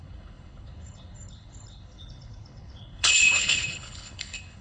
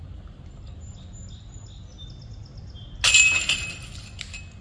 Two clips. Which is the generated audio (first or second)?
first